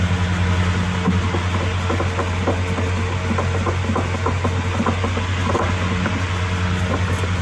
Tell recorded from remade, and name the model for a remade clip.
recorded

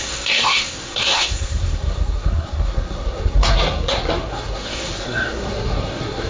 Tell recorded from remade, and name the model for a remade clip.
remade, codec, SNAC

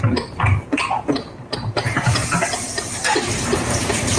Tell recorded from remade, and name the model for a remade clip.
remade, vocoder, BigVGAN v2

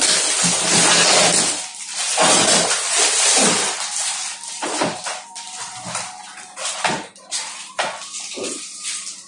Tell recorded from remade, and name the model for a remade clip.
recorded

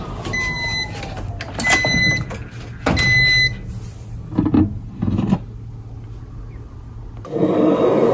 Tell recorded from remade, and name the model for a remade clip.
recorded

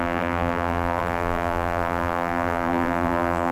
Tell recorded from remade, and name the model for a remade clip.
remade, vocoder, BigVGAN v2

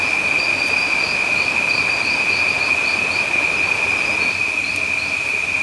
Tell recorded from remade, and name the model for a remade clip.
recorded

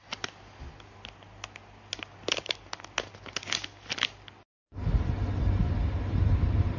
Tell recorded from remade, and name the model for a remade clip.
recorded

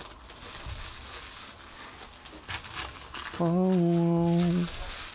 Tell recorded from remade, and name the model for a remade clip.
recorded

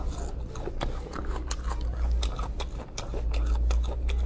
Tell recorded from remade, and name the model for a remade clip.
recorded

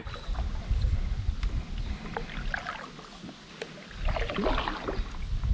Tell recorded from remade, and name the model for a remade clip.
recorded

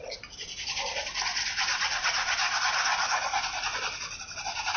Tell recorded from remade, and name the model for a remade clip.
recorded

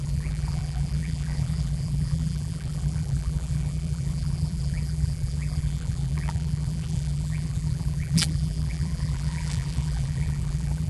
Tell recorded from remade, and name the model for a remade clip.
remade, vocoder, BigVGAN v2